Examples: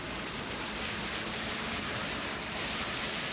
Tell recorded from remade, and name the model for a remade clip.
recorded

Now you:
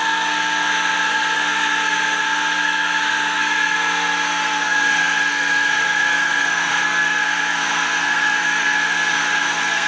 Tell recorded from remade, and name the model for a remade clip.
remade, codec, SNAC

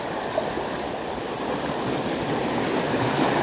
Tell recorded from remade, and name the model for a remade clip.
recorded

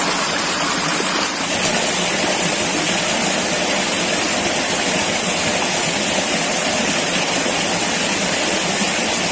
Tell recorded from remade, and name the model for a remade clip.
recorded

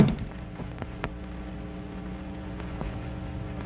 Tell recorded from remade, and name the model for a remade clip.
remade, vocoder, Vocos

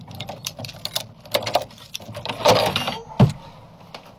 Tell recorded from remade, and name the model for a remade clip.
recorded